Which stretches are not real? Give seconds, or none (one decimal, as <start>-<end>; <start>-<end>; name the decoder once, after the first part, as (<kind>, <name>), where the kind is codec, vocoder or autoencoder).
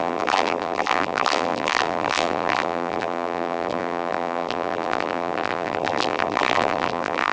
0.0-7.3 (vocoder, BigVGAN v2)